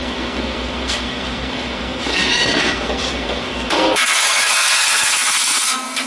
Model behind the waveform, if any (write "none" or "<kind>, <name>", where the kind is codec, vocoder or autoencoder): codec, SNAC